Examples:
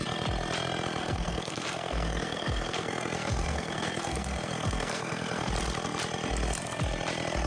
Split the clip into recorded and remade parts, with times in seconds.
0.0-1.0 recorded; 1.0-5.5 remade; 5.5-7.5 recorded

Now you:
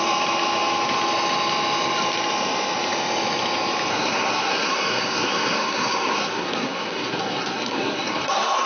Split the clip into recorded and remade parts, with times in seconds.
0.0-3.9 recorded; 3.9-8.7 remade

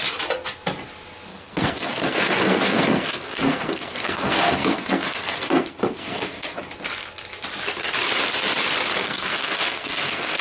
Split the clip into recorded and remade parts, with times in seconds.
0.0-1.3 recorded; 1.3-6.6 remade; 6.6-9.0 recorded; 9.0-10.4 remade

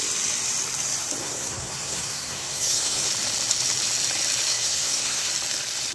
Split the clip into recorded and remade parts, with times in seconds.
0.0-1.2 recorded; 1.2-3.1 remade; 3.1-4.5 recorded; 4.5-5.3 remade; 5.3-5.9 recorded

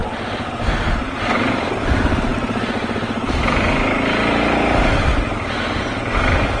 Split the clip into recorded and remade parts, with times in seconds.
0.0-6.6 recorded

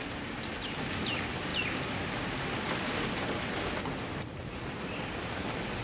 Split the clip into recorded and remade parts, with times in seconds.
0.0-5.8 recorded

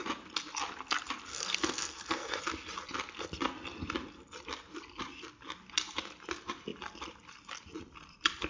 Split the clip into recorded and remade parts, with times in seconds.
0.0-1.3 recorded; 1.3-2.4 remade; 2.4-8.5 recorded